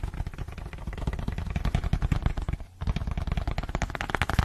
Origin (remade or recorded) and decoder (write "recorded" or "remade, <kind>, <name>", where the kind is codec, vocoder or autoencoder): recorded